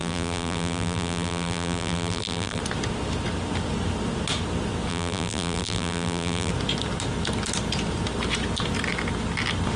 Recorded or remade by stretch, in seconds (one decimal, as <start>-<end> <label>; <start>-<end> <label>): 0.0-2.6 remade; 2.6-4.9 recorded; 4.9-6.5 remade; 6.5-9.8 recorded

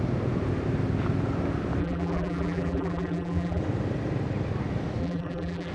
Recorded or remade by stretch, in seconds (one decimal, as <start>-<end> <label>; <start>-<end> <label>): 0.0-1.8 recorded; 1.8-3.6 remade; 3.6-5.0 recorded; 5.0-5.7 remade

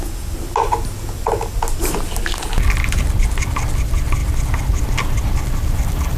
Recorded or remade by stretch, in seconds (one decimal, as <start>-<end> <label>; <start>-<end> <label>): 0.0-6.2 recorded